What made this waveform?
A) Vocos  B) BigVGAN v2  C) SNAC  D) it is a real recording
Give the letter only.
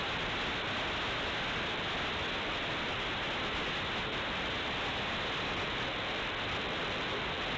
D